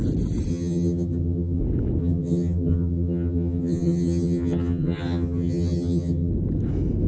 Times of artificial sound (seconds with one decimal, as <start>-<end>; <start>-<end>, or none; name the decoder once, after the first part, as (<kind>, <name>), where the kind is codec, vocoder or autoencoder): 0.5-1.6 (vocoder, HiFi-GAN); 2.0-6.3